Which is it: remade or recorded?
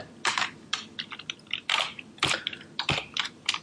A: recorded